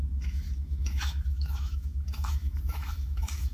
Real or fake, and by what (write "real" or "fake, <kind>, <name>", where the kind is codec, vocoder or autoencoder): fake, autoencoder, DAC-VAE